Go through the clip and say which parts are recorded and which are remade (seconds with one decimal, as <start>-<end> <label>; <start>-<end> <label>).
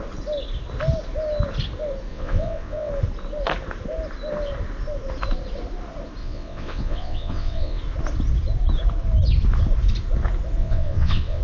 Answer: 0.0-2.1 recorded; 2.1-2.9 remade; 2.9-6.2 recorded; 6.2-7.8 remade; 7.8-10.6 recorded; 10.6-11.4 remade